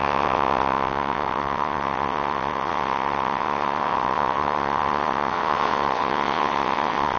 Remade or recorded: remade